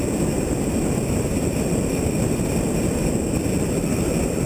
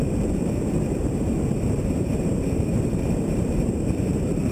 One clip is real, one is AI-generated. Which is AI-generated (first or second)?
second